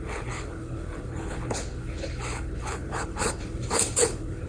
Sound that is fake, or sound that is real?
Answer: fake